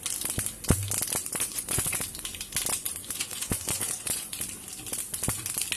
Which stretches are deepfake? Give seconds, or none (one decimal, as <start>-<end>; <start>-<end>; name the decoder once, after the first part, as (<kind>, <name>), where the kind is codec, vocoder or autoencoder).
1.2-1.9 (vocoder, Vocos); 3.0-4.4